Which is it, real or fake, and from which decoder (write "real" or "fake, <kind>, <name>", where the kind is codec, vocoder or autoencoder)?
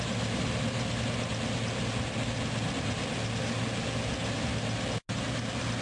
real